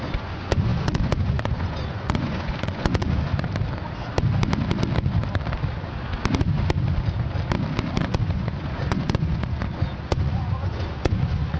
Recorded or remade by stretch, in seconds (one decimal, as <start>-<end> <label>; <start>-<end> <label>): 0.0-3.3 remade; 3.3-8.0 recorded; 8.0-11.6 remade

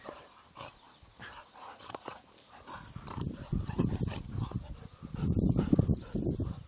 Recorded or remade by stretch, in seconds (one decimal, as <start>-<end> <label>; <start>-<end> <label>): 0.0-6.7 recorded